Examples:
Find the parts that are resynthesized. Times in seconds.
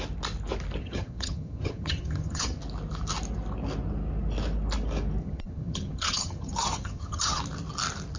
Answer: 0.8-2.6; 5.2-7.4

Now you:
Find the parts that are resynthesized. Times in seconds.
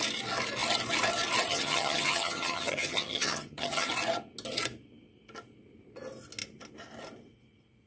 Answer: 1.5-3.9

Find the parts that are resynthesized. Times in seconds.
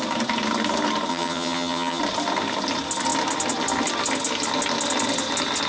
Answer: 1.1-2.0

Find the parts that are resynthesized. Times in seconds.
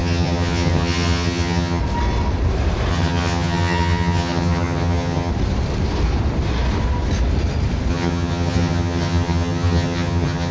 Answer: 0.0-1.8; 2.9-5.3; 7.9-10.5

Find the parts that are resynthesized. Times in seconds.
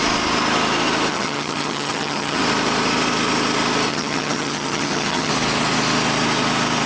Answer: 1.1-2.4; 3.9-5.3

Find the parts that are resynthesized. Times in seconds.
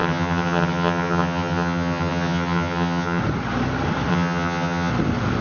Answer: 0.0-3.2; 4.1-4.9